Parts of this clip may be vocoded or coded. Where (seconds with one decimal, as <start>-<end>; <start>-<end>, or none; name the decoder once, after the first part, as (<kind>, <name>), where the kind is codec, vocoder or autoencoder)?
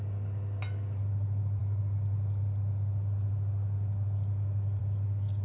none